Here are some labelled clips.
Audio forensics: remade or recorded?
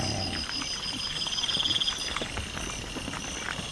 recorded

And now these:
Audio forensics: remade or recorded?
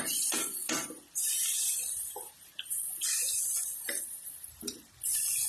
remade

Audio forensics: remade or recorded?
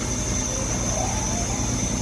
recorded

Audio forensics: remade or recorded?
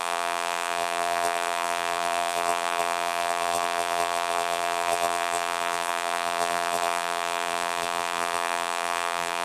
remade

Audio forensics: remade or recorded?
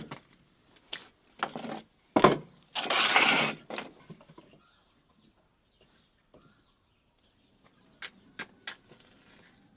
recorded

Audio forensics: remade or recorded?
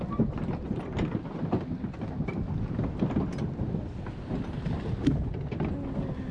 recorded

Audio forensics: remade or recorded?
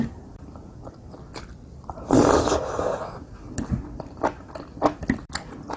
recorded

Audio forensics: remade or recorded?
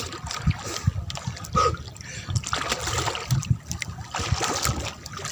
recorded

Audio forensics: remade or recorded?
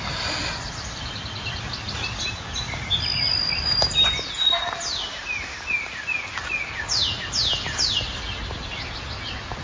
recorded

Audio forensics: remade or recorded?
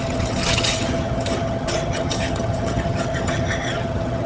remade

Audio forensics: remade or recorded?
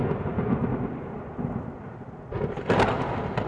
recorded